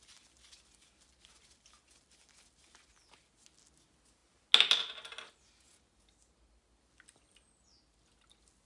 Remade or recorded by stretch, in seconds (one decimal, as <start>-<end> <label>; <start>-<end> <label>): 0.0-8.7 recorded